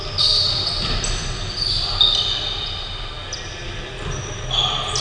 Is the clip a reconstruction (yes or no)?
no